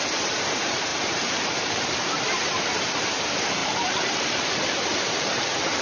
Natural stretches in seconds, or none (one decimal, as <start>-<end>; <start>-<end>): none